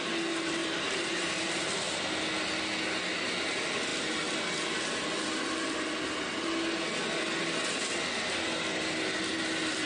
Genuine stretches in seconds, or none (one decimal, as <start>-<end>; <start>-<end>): 0.0-0.6; 2.2-9.9